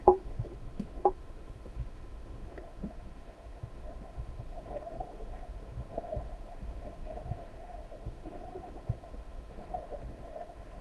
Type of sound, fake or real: fake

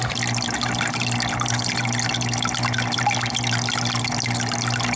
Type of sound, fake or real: real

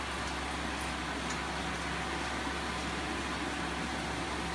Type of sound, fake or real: real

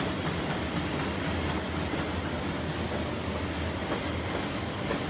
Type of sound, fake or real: real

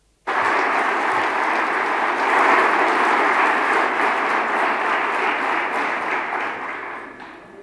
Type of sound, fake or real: real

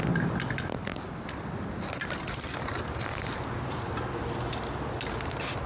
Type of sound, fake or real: real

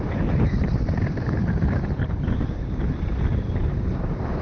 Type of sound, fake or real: fake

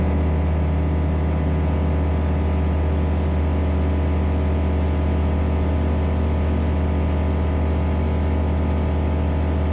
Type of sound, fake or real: real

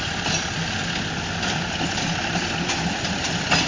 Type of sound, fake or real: real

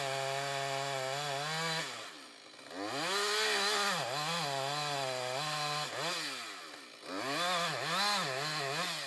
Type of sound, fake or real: real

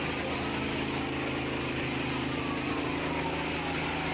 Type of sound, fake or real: real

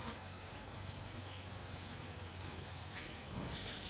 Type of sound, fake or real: fake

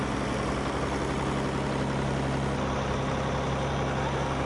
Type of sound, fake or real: real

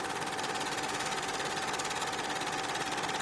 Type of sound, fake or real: real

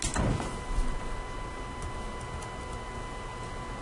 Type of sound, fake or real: real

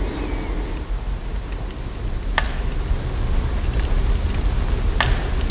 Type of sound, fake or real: real